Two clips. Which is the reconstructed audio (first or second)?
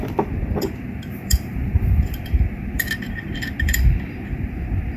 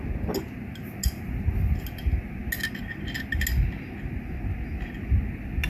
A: first